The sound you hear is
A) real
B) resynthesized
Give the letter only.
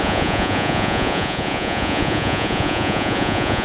B